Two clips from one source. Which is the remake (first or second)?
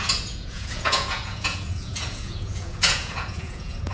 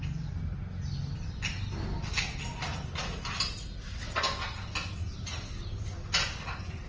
first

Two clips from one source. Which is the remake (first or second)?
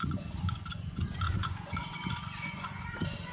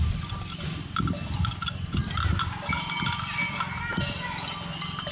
first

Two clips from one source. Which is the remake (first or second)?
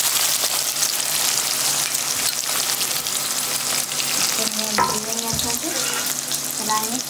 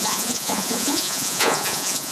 second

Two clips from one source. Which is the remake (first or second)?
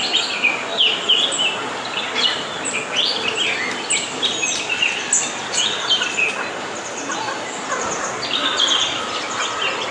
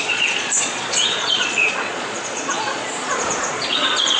second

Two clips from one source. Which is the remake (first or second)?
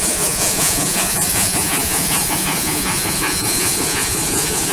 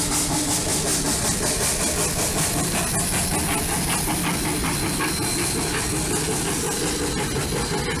first